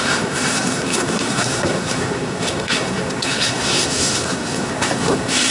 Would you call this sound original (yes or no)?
no